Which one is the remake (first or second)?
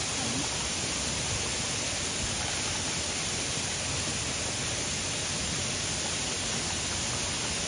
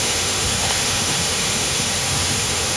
second